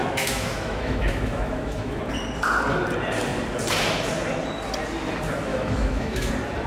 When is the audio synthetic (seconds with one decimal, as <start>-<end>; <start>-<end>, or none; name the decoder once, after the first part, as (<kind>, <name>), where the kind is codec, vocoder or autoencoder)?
0.0-2.0 (autoencoder, DAC-VAE); 5.5-6.3